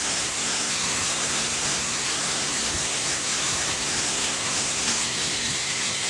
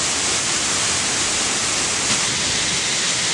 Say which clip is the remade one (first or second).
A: first